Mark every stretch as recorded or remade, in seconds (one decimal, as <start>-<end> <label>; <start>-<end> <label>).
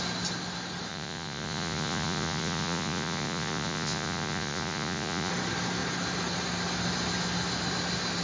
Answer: 0.0-0.9 recorded; 0.9-5.3 remade; 5.3-8.2 recorded